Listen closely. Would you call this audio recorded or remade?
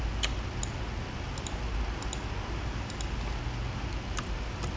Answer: recorded